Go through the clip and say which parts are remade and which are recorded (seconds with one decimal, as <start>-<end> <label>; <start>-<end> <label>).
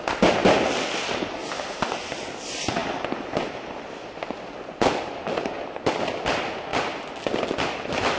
0.0-8.2 recorded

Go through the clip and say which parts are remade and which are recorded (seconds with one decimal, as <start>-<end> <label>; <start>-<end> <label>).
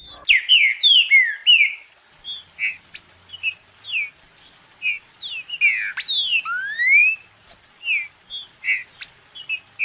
0.0-9.8 recorded